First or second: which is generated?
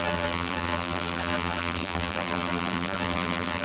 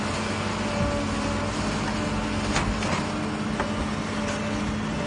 first